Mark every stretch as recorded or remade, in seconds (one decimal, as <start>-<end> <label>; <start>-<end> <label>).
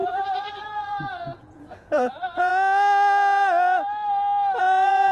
0.0-2.5 remade; 2.5-4.6 recorded; 4.6-5.1 remade